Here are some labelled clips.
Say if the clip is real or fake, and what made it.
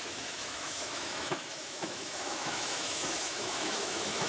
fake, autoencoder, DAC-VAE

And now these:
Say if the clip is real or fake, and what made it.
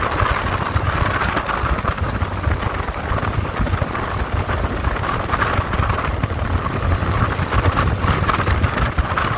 real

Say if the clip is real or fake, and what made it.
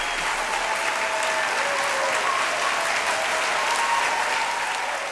real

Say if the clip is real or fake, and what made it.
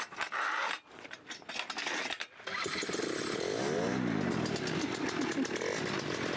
real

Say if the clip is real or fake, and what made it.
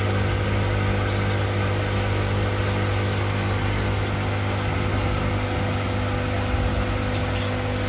real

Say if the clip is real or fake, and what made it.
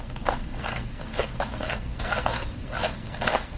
fake, codec, SNAC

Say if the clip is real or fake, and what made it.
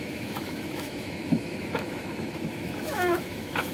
fake, autoencoder, DAC-VAE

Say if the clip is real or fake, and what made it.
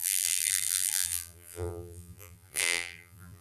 fake, vocoder, BigVGAN v2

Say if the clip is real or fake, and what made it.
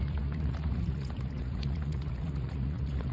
fake, vocoder, Vocos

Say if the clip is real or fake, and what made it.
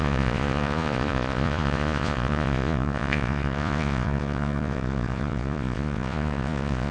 fake, vocoder, Vocos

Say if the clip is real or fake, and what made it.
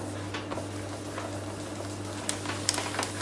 real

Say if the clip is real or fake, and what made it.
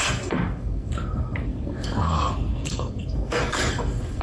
fake, codec, SNAC